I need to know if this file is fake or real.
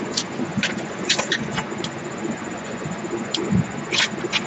fake